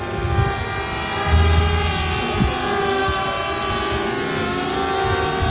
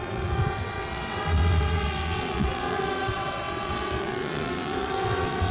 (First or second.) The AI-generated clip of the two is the second